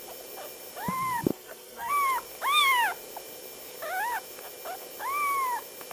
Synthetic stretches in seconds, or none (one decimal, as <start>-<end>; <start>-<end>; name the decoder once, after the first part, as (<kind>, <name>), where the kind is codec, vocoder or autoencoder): 1.3-1.9 (codec, SNAC)